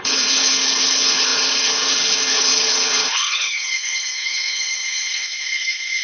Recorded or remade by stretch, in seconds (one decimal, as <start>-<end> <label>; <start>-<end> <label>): 0.0-6.0 remade